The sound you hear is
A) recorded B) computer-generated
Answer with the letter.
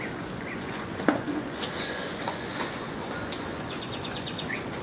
B